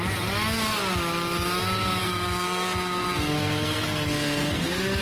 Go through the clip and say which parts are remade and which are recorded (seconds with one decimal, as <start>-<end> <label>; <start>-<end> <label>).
0.0-2.0 recorded; 2.0-5.0 remade